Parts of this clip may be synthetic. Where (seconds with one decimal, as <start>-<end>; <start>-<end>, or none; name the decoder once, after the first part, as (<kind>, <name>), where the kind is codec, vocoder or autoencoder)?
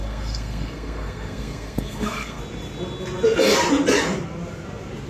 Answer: 0.0-2.4 (codec, SNAC)